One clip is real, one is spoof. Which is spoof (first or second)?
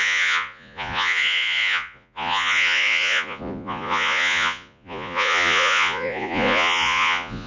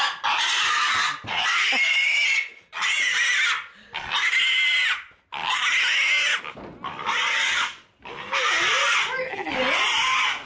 first